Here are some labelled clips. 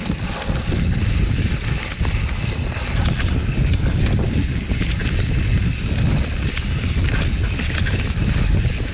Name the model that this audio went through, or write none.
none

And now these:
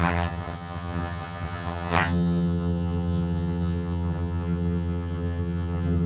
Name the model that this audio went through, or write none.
vocoder, HiFi-GAN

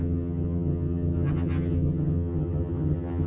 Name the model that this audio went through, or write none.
vocoder, HiFi-GAN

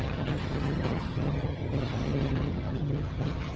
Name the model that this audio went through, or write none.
vocoder, HiFi-GAN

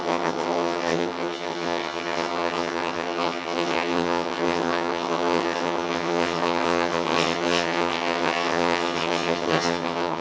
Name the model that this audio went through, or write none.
vocoder, HiFi-GAN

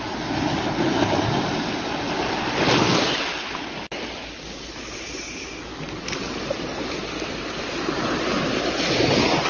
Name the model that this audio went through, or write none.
none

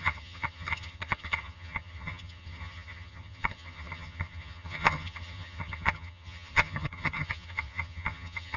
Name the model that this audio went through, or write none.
vocoder, HiFi-GAN